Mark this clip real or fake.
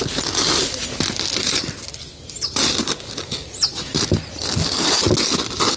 real